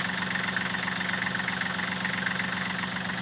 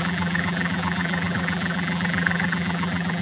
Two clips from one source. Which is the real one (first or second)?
first